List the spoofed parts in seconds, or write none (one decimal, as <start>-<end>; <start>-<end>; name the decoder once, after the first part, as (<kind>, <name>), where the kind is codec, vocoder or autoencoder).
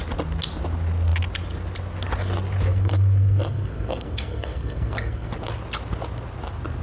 2.7-5.3 (codec, SNAC)